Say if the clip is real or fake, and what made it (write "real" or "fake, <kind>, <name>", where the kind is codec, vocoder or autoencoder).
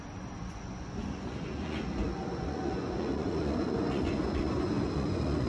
fake, vocoder, Vocos